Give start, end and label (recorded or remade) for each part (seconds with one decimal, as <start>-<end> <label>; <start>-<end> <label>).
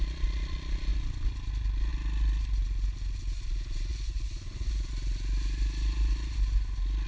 0.0-3.9 recorded; 3.9-4.9 remade; 4.9-7.1 recorded